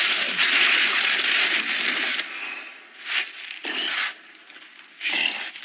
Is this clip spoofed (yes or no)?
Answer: no